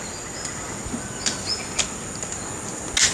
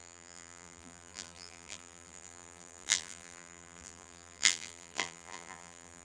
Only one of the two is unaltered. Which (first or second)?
first